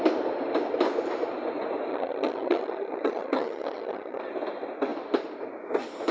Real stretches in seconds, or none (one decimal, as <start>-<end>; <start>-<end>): 0.0-1.9; 4.2-6.1